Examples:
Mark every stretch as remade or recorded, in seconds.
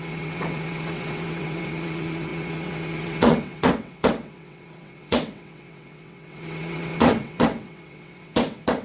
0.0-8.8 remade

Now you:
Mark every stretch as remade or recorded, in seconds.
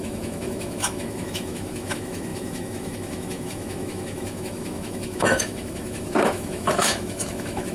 0.0-7.7 remade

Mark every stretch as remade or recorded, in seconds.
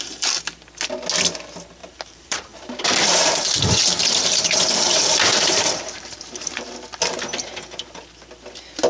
0.0-1.8 recorded; 1.8-6.7 remade; 6.7-8.9 recorded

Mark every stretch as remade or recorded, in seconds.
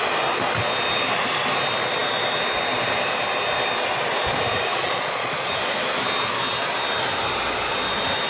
0.0-4.7 recorded; 4.7-5.5 remade; 5.5-8.3 recorded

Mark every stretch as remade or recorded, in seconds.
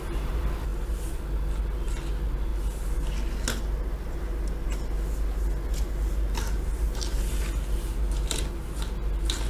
0.0-9.5 recorded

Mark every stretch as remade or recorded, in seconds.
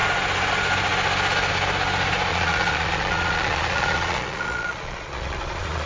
0.0-2.3 recorded; 2.3-5.9 remade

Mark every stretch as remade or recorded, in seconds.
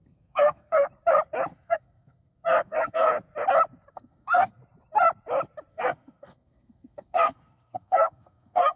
0.0-0.9 remade; 0.9-1.5 recorded; 1.5-3.1 remade; 3.1-3.9 recorded; 3.9-4.6 remade; 4.6-5.7 recorded; 5.7-8.8 remade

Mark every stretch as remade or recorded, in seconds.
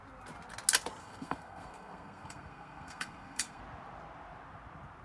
0.0-1.0 recorded; 1.0-3.6 remade; 3.6-5.0 recorded